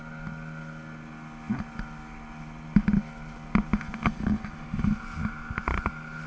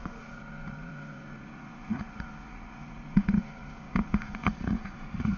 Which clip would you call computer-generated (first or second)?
second